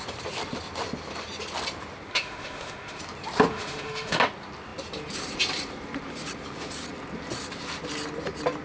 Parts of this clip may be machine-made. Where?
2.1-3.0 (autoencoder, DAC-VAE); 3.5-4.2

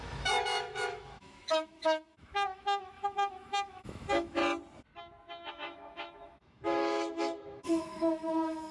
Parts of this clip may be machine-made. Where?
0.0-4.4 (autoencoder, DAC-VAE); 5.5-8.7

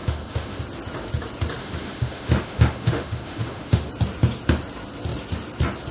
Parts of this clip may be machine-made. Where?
0.0-0.6 (autoencoder, DAC-VAE); 1.6-3.9

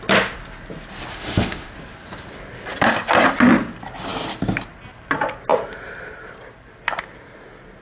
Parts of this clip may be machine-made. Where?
1.1-1.7 (autoencoder, DAC-VAE)

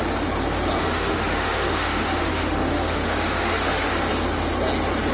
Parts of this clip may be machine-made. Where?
0.8-3.9 (autoencoder, DAC-VAE)

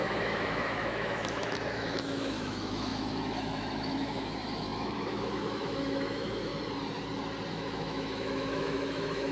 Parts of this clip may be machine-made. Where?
0.0-6.5 (autoencoder, DAC-VAE); 7.5-9.3